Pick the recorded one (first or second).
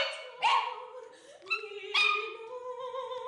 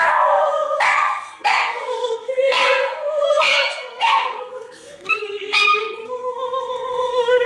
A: first